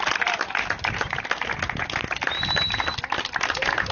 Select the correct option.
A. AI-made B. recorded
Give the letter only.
B